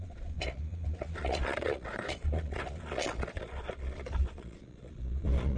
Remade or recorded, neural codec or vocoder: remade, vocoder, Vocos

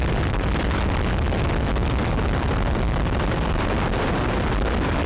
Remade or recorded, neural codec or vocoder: remade, vocoder, BigVGAN v2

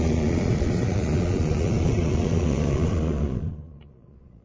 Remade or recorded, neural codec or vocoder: remade, vocoder, Vocos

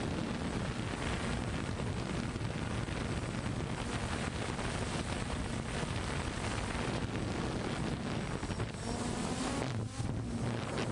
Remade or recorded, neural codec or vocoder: recorded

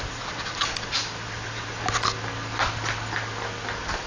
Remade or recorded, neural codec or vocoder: recorded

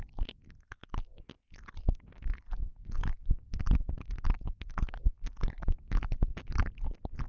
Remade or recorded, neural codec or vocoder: recorded